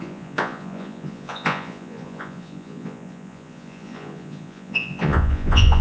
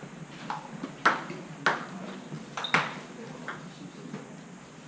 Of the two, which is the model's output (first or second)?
first